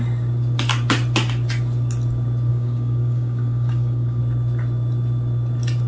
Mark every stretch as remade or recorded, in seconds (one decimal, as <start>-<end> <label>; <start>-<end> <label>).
0.0-2.5 recorded; 2.5-4.2 remade; 4.2-5.9 recorded